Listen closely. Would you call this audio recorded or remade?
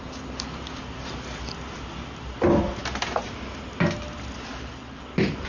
recorded